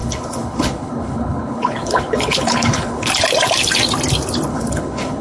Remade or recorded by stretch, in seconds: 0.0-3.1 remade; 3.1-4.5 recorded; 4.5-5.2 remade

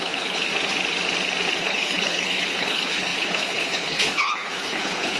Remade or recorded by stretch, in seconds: 0.0-0.5 remade; 0.5-1.6 recorded; 1.6-5.2 remade

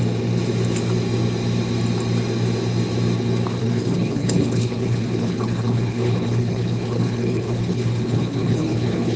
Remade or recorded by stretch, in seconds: 0.0-3.6 recorded; 3.6-9.2 remade

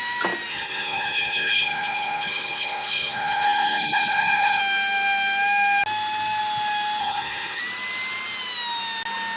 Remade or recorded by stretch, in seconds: 0.0-0.5 recorded; 0.5-4.6 remade; 4.6-7.0 recorded; 7.0-7.6 remade; 7.6-9.4 recorded

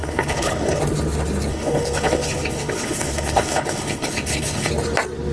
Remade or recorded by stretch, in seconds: 0.0-0.8 remade; 0.8-1.5 recorded; 1.5-4.7 remade; 4.7-5.3 recorded

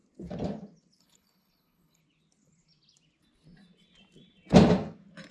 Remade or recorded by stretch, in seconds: 0.0-1.0 recorded; 1.0-2.0 remade; 2.0-5.3 recorded

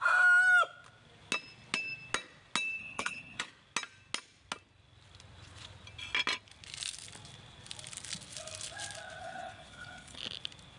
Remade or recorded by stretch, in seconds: 0.0-2.8 recorded; 2.8-3.5 remade; 3.5-9.2 recorded; 9.2-10.2 remade; 10.2-10.8 recorded

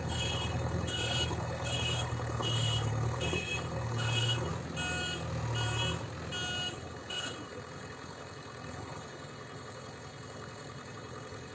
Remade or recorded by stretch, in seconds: 0.0-4.5 remade; 4.5-6.7 recorded; 6.7-11.5 remade